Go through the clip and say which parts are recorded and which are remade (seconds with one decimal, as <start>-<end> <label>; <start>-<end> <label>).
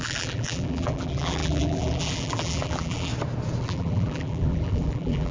0.0-3.1 remade; 3.1-3.6 recorded; 3.6-5.3 remade